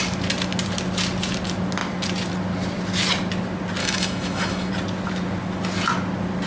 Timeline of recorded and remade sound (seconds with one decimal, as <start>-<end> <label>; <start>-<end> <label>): 0.0-3.8 recorded; 3.8-4.7 remade; 4.7-6.5 recorded